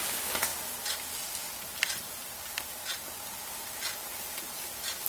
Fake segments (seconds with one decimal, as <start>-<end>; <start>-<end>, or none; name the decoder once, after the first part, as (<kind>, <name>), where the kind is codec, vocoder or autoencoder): 4.1-5.1 (vocoder, BigVGAN v2)